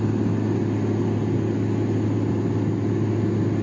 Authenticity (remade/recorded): recorded